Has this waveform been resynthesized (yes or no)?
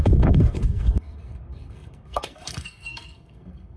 yes